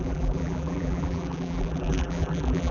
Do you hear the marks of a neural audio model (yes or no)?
yes